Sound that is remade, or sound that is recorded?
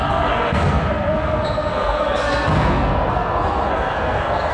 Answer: remade